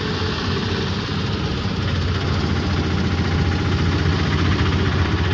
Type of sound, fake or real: real